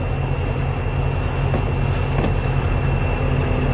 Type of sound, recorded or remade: recorded